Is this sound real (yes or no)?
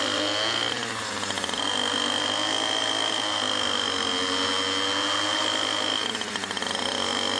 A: yes